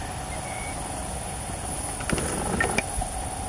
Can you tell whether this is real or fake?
real